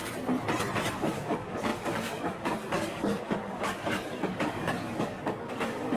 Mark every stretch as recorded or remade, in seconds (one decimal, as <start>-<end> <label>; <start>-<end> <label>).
0.0-0.9 recorded; 0.9-6.0 remade